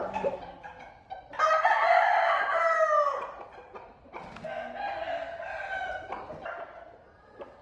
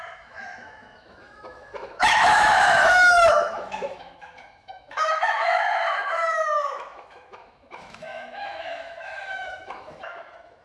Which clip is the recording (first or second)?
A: first